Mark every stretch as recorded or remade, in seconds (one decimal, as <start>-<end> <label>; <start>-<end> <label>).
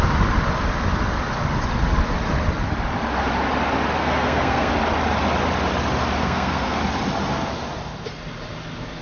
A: 0.0-4.0 recorded; 4.0-4.7 remade; 4.7-6.2 recorded; 6.2-6.8 remade; 6.8-9.0 recorded